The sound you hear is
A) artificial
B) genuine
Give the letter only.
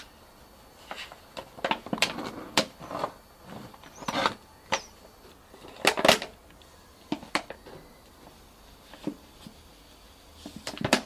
B